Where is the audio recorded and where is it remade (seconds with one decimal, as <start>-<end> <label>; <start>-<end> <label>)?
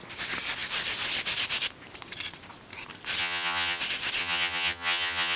0.0-3.2 recorded; 3.2-3.8 remade; 3.8-4.2 recorded; 4.2-5.4 remade